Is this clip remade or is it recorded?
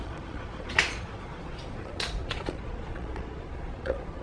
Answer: remade